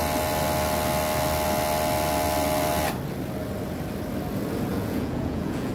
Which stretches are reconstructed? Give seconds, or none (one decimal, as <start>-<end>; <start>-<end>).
4.7-5.7